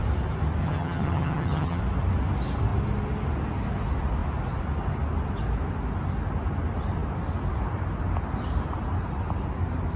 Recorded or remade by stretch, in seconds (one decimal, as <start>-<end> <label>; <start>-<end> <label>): 0.0-0.6 recorded; 0.6-1.8 remade; 1.8-10.0 recorded